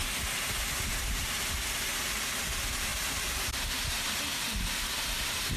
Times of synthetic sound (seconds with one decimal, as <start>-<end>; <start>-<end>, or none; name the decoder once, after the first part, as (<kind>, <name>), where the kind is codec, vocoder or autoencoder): 2.9-3.5 (vocoder, BigVGAN v2)